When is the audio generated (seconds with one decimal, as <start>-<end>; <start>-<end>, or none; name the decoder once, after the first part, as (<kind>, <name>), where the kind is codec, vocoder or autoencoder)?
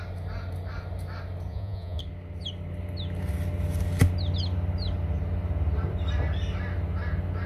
1.5-2.0 (vocoder, Vocos)